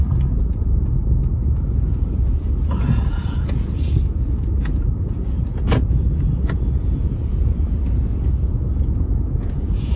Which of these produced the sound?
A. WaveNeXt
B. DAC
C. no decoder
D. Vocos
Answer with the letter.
D